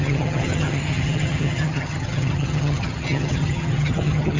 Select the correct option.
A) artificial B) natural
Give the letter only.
A